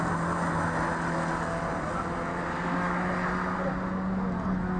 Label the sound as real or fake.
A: real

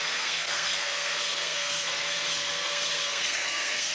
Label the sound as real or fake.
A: fake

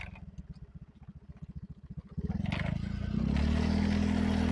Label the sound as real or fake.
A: real